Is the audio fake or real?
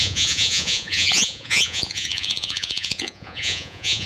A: fake